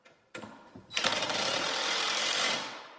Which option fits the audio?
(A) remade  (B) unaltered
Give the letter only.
A